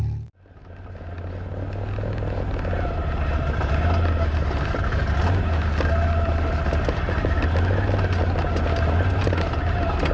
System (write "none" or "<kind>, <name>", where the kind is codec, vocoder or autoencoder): none